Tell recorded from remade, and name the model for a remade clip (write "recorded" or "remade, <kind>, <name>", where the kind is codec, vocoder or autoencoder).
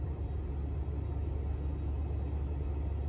recorded